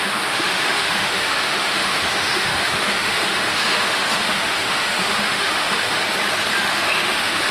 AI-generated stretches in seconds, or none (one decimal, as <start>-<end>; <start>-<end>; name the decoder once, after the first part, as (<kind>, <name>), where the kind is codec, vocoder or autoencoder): 0.0-6.0 (autoencoder, DAC-VAE); 6.6-7.5